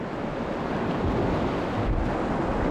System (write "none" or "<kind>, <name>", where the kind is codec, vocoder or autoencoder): none